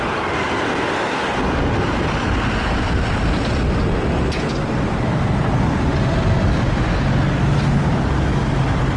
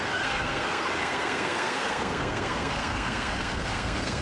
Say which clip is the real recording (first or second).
first